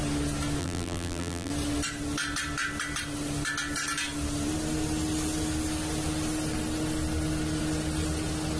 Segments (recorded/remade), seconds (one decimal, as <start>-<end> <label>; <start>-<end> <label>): 0.0-0.6 recorded; 0.6-1.5 remade; 1.5-8.6 recorded